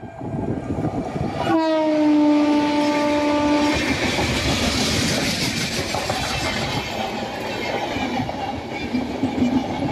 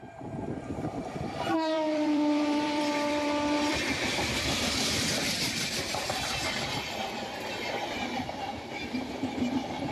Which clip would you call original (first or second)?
first